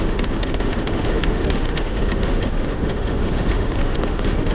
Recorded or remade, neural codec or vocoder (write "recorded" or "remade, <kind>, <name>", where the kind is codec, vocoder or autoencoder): remade, autoencoder, DAC-VAE